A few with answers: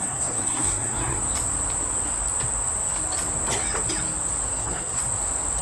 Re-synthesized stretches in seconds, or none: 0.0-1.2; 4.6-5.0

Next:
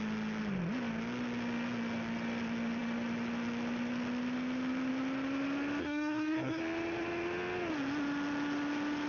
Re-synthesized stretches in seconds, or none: 5.8-6.6

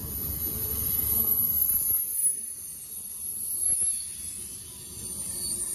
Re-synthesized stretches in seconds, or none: none

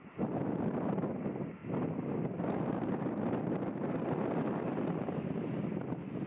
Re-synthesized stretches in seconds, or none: none